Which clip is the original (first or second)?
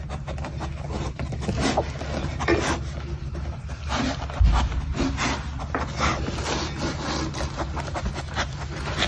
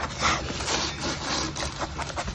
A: first